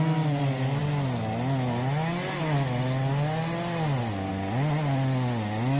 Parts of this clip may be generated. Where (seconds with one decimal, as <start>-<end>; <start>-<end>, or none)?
none